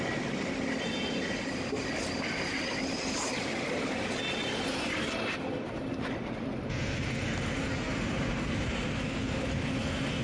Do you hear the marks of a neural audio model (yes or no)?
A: no